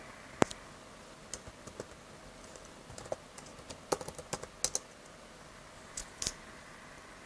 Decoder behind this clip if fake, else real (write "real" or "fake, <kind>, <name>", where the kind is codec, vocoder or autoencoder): real